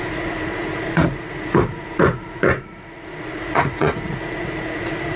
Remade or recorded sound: remade